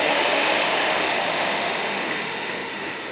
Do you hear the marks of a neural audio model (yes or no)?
yes